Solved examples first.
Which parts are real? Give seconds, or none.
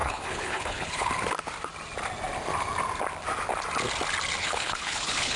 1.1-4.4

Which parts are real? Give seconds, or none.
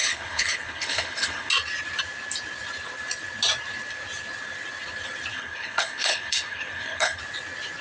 1.5-5.3; 7.2-7.8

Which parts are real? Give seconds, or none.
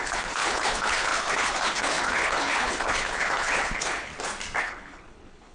4.1-4.6